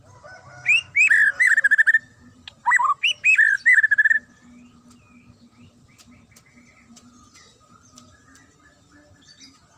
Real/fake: real